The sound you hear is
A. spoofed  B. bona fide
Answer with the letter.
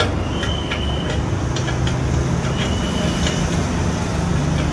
B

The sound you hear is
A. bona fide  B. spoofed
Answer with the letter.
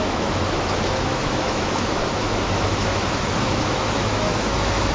B